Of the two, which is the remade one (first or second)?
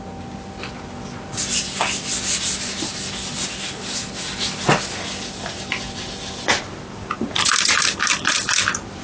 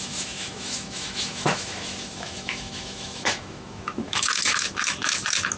second